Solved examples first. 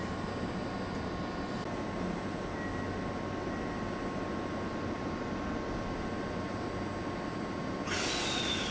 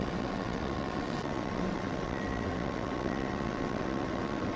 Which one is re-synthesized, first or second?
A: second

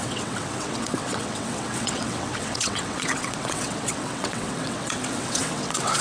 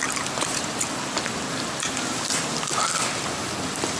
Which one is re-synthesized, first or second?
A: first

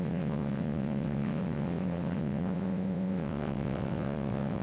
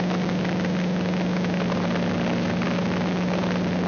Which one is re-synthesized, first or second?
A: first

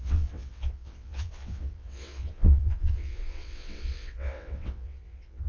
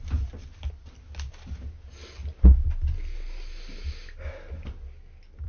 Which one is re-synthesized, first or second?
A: first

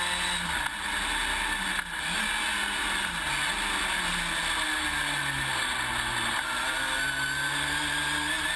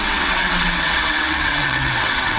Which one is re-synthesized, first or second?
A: second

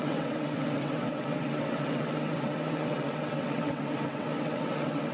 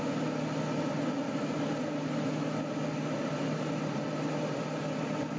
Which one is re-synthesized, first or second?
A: first